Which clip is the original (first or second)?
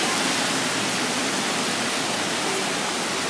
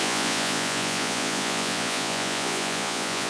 first